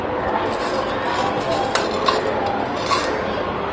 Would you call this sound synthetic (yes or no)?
no